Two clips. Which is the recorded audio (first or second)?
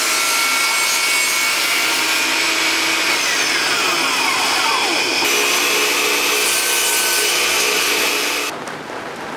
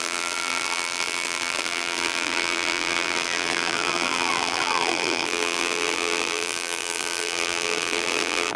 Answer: first